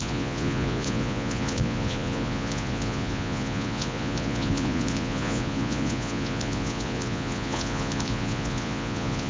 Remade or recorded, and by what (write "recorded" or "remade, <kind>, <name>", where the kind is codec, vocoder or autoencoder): remade, vocoder, Vocos